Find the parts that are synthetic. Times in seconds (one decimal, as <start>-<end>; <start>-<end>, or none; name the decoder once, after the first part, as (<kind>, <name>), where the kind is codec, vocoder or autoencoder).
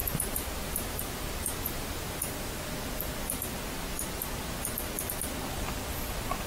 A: 0.0-2.5 (vocoder, BigVGAN v2)